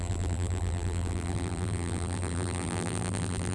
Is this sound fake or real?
fake